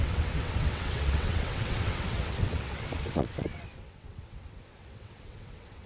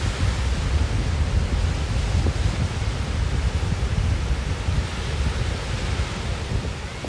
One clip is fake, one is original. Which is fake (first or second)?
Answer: first